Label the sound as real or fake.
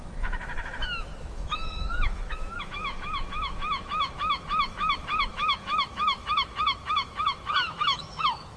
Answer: fake